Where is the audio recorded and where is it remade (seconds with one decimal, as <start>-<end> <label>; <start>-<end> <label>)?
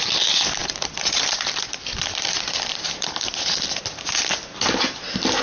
0.0-0.6 recorded; 0.6-3.8 remade; 3.8-5.4 recorded